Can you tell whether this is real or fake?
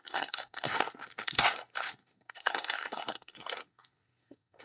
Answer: fake